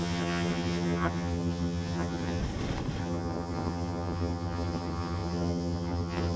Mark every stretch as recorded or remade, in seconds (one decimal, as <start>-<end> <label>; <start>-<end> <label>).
0.0-2.4 remade; 2.4-3.0 recorded; 3.0-6.4 remade